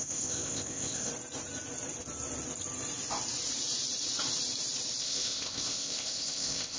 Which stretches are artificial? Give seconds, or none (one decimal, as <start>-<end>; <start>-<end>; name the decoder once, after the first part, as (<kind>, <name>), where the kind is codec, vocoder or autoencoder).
0.0-1.1 (codec, ZipCodec); 5.0-6.8